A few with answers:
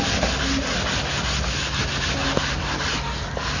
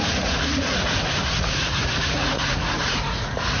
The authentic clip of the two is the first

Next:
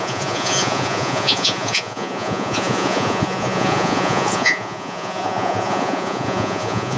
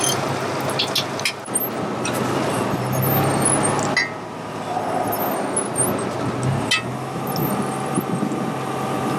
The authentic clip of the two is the second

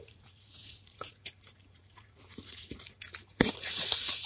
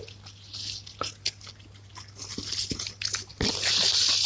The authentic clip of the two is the second